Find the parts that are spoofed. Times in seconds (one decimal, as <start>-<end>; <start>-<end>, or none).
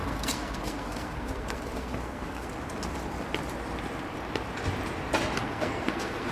0.0-2.5; 5.4-6.3